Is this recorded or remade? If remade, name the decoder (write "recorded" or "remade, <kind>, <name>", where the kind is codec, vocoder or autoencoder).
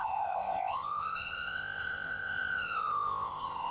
remade, codec, ZipCodec